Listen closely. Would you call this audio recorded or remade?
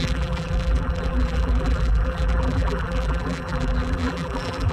remade